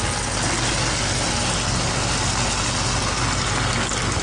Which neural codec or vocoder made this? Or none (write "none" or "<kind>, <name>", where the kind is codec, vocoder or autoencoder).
none